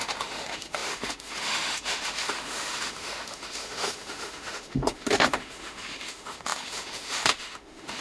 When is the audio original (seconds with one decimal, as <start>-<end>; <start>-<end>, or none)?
none

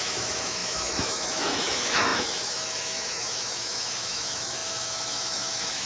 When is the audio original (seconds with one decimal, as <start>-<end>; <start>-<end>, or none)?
none